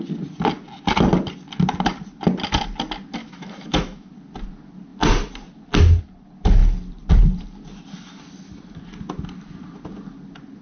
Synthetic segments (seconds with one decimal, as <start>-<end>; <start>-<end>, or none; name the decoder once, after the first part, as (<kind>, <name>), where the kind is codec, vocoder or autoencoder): 3.2-4.1 (autoencoder, DAC-VAE)